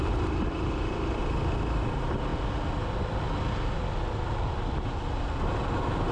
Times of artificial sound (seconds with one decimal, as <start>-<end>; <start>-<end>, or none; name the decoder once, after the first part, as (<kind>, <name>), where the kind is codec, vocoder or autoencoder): 0.0-1.2 (vocoder, BigVGAN v2); 1.9-2.3